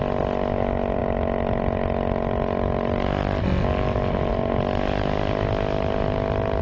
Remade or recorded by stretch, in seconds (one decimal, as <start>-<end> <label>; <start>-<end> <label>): 0.0-6.6 recorded